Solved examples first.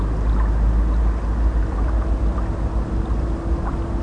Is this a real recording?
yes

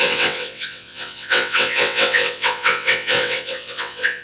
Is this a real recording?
no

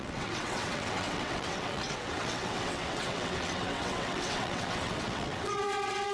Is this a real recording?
no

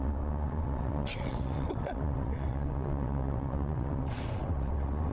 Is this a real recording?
no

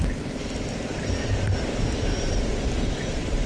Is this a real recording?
yes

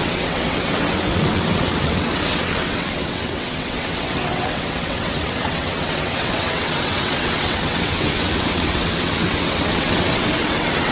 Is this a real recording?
no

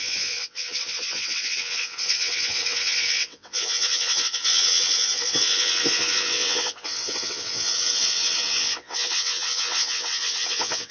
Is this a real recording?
no